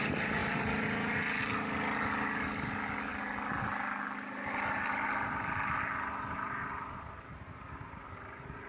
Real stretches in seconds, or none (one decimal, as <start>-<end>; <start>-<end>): 0.4-1.4; 3.1-3.6